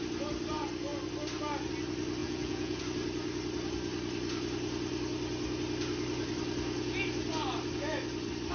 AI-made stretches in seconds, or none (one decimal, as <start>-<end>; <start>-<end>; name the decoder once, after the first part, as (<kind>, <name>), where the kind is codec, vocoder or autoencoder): 2.2-2.8 (vocoder, Vocos)